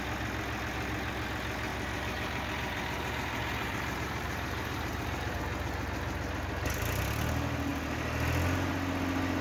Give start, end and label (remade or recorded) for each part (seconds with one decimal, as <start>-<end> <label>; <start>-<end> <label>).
0.0-1.7 recorded; 1.7-5.4 remade; 5.4-9.4 recorded